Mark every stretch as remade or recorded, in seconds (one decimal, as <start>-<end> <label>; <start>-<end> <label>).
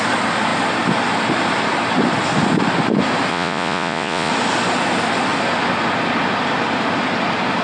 0.0-3.3 recorded; 3.3-4.3 remade; 4.3-7.6 recorded